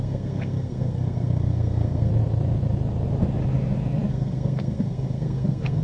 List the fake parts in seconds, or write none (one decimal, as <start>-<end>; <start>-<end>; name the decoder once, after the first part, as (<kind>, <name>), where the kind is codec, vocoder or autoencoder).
0.0-2.1 (codec, SNAC); 4.1-5.8